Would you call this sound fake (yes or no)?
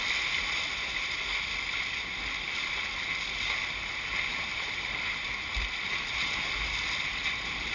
no